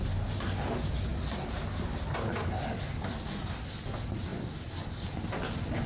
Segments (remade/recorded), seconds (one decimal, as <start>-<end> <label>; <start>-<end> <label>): 0.0-5.9 recorded